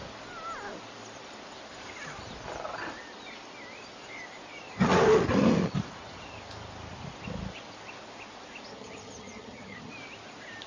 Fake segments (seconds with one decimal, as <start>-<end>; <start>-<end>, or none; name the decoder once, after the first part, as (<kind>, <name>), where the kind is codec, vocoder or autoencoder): 8.7-9.9 (vocoder, HiFi-GAN)